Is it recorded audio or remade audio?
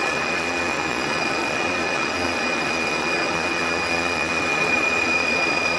remade